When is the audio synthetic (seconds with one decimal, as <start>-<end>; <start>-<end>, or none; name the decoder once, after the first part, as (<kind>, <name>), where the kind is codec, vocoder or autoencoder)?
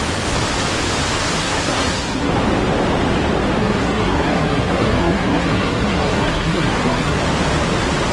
1.4-2.3 (codec, SNAC); 3.6-7.2